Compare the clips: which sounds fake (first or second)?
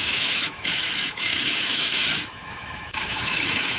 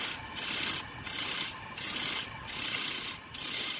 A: first